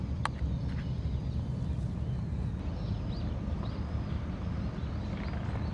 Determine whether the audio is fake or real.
real